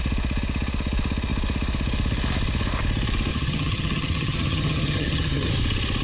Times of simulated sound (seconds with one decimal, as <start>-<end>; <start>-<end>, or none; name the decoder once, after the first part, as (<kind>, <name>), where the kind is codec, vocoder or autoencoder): 3.3-5.5 (vocoder, HiFi-GAN)